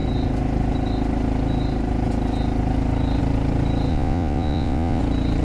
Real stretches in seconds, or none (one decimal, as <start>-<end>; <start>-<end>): 0.0-3.9; 5.0-5.4